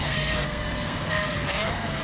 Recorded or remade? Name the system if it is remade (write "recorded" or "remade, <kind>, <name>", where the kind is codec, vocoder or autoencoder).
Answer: remade, codec, SNAC